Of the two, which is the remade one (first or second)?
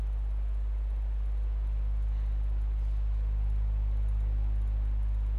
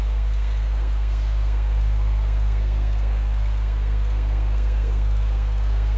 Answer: second